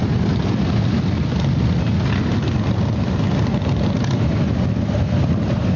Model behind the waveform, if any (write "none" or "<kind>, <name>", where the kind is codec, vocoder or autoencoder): none